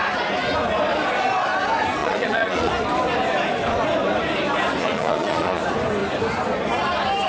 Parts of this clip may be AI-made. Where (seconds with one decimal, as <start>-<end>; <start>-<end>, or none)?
2.0-2.7; 4.8-5.6